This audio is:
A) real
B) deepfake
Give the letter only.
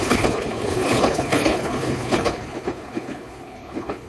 B